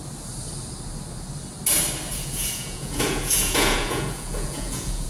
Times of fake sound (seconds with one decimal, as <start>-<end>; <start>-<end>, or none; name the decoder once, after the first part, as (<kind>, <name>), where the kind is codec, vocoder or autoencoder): 2.1-5.1 (vocoder, Vocos)